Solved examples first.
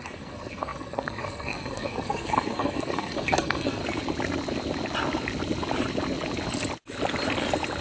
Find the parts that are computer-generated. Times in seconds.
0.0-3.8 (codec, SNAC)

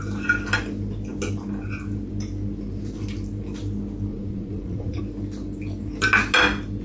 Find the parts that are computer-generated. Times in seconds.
4.1-5.0 (vocoder, Vocos)

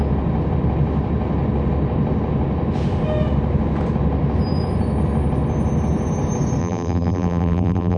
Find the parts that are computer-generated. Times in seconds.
6.6-8.0 (vocoder, BigVGAN v2)

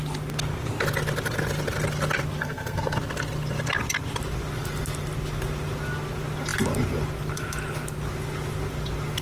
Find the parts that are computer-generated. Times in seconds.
2.4-3.0 (codec, SNAC)

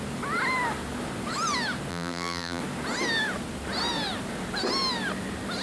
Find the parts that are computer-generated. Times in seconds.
1.9-2.6 (vocoder, BigVGAN v2)

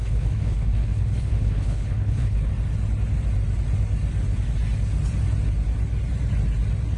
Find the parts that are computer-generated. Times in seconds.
0.0-2.5 (codec, HILCodec)

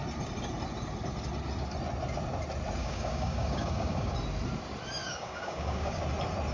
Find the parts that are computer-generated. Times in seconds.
2.8-4.1 (codec, DAC); 5.0-6.0

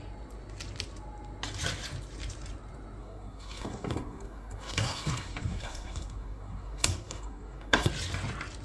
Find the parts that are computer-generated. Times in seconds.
3.0-7.9 (codec, SNAC)